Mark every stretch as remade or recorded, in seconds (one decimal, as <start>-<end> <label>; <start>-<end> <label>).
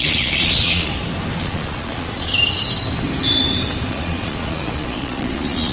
0.0-0.9 remade; 0.9-1.4 recorded; 1.4-2.3 remade; 2.3-3.9 recorded; 3.9-5.7 remade